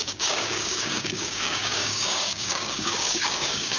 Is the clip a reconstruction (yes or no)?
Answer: yes